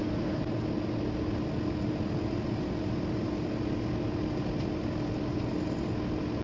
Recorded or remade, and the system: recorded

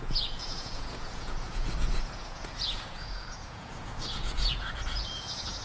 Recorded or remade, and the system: remade, vocoder, Vocos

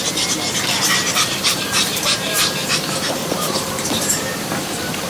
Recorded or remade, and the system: remade, vocoder, BigVGAN v2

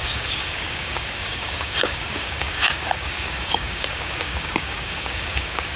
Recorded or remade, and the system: remade, codec, DAC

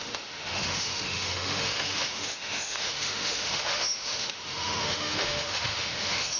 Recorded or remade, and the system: remade, autoencoder, DAC-VAE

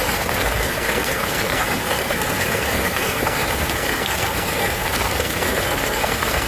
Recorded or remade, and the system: remade, codec, SNAC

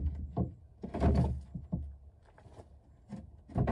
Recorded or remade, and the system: recorded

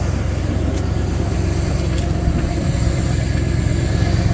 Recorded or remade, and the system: recorded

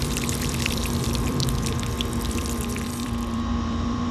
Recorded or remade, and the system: remade, vocoder, BigVGAN v2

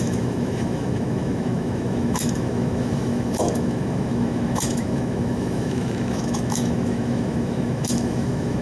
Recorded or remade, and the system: remade, autoencoder, DAC-VAE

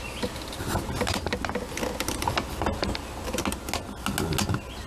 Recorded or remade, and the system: recorded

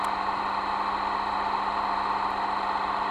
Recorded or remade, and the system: recorded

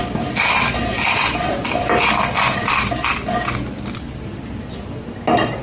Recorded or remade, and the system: recorded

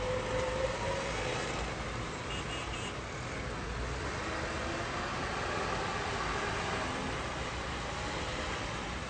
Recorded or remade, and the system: recorded